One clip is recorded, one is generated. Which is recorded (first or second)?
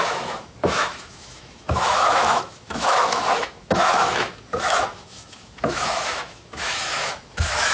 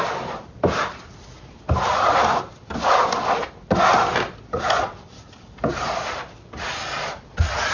second